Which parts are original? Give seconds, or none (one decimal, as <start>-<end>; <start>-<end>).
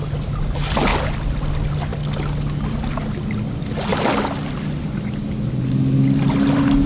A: 0.0-6.9